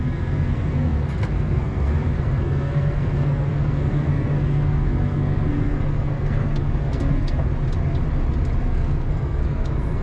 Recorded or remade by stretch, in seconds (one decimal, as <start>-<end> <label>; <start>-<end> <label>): 0.0-7.5 remade; 7.5-8.6 recorded; 8.6-10.0 remade